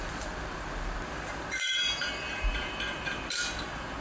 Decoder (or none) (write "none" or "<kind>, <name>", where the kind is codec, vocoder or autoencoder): vocoder, BigVGAN v2